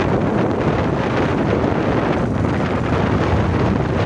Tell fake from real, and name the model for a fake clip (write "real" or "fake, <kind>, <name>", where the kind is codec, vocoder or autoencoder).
real